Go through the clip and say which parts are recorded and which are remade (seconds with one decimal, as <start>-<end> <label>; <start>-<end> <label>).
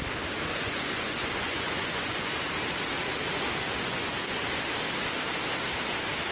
0.0-0.5 recorded; 0.5-2.3 remade; 2.3-3.8 recorded; 3.8-4.4 remade; 4.4-6.3 recorded